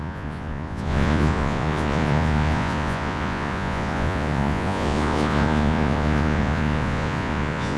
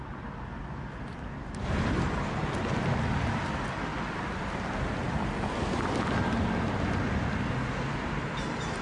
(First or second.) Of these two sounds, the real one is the second